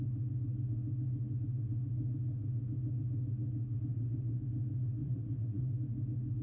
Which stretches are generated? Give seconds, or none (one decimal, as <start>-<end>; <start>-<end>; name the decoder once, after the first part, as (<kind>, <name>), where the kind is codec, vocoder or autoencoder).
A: 3.9-4.4 (vocoder, WaveNeXt); 5.0-5.7